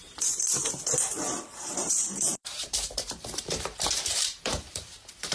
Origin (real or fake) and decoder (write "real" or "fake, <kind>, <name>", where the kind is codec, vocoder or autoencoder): fake, vocoder, BigVGAN v2